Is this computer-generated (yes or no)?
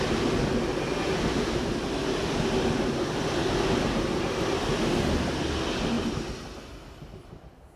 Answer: no